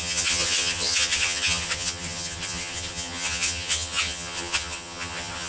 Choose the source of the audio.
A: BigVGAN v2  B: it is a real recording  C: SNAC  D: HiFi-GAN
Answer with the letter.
D